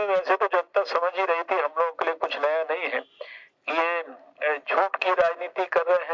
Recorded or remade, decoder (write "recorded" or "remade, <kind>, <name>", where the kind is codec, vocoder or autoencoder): recorded